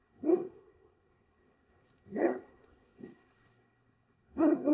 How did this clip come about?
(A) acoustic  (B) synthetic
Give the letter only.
B